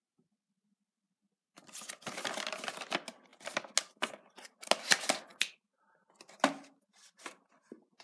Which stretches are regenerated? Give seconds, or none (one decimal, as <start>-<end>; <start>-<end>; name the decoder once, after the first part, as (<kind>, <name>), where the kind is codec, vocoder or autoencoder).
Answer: none